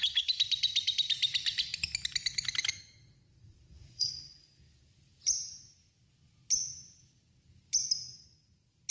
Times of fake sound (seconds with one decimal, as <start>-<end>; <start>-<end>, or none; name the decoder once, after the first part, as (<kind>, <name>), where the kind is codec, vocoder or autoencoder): 3.3-4.1 (vocoder, Vocos)